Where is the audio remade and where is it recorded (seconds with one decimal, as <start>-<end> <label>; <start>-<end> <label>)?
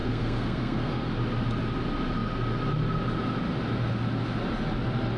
0.0-1.1 remade; 1.1-5.2 recorded